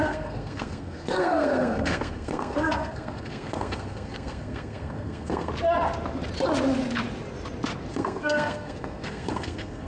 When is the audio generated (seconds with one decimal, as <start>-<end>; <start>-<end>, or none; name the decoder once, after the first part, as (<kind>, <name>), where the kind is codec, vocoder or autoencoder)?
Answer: 0.0-5.5 (codec, SNAC); 7.9-9.9